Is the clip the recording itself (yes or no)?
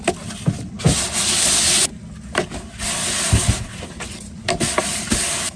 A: yes